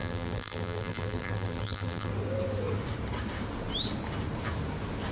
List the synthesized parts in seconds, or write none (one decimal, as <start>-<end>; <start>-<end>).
0.0-2.1